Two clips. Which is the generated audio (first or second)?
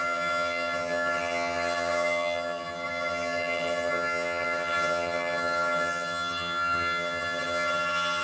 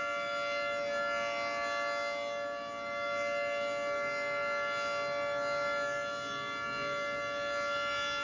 first